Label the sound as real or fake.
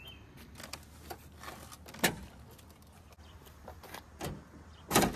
real